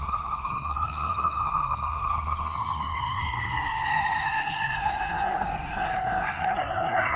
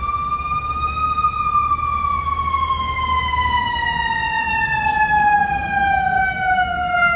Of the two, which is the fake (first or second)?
first